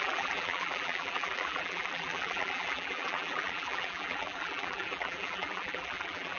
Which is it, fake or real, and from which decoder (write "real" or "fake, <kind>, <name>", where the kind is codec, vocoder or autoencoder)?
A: fake, vocoder, BigVGAN v2